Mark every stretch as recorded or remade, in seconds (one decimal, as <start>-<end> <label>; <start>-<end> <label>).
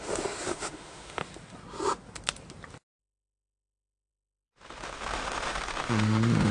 0.0-1.2 remade; 1.2-3.0 recorded; 3.0-6.5 remade